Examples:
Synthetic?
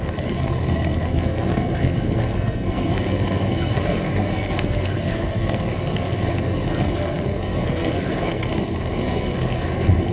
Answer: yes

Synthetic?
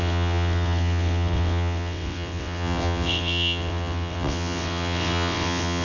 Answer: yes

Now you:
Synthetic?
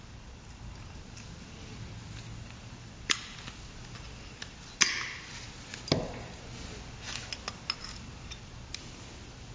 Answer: no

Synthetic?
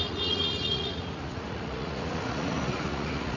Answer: yes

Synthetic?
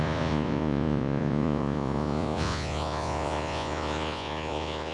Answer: yes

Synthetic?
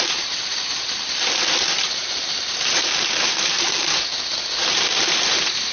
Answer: yes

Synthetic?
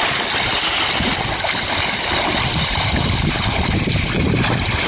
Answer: yes